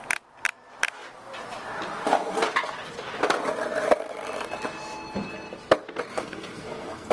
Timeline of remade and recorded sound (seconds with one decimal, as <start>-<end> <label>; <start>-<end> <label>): 0.0-6.1 recorded; 6.1-7.1 remade